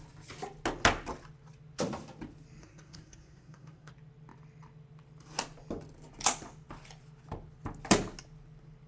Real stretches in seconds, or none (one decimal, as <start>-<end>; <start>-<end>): 0.0-2.6; 3.9-8.9